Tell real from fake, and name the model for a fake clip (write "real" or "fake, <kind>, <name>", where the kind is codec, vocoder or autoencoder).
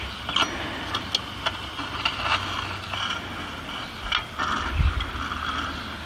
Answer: real